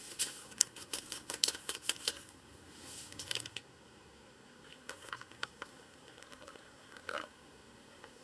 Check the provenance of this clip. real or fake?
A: fake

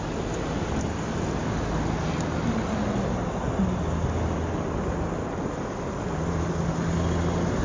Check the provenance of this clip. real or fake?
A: real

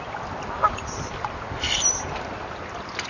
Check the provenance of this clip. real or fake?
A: real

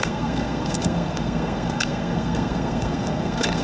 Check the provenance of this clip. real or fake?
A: fake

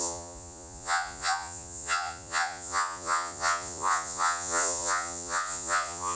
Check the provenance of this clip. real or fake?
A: fake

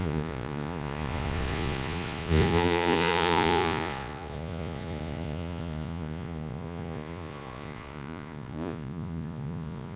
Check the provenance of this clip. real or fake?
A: fake